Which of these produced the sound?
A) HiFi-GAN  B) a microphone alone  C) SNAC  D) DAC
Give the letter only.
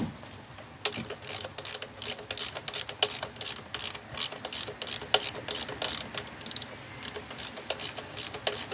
B